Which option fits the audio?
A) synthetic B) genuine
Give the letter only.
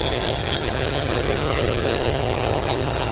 A